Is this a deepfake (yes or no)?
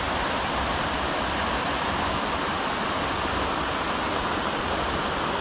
no